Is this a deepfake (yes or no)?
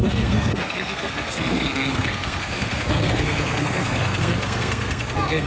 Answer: yes